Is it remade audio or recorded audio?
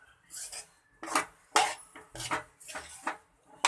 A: recorded